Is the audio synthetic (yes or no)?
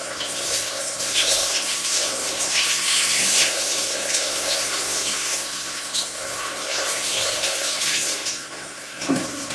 yes